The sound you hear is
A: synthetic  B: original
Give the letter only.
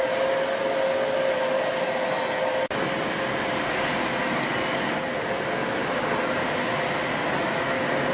B